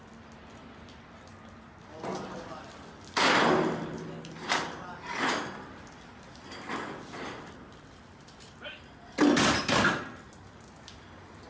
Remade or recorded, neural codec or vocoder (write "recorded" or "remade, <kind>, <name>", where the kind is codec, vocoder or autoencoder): recorded